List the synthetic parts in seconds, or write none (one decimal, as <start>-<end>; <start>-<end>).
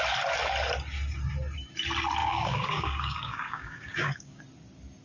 2.2-4.4